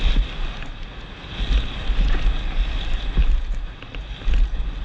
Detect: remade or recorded recorded